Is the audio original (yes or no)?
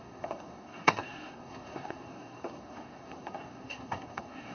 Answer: no